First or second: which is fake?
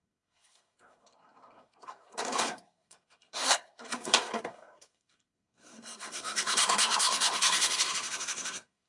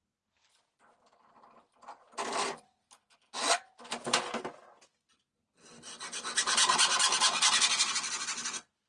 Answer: first